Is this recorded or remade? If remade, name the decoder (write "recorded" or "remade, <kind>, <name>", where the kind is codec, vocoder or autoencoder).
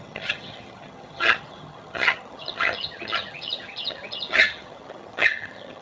remade, vocoder, HiFi-GAN